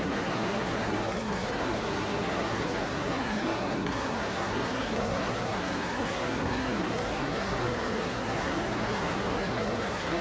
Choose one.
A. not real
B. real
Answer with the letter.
A